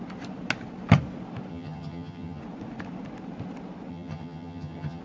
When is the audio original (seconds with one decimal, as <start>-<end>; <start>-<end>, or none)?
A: 0.0-1.5; 2.4-3.9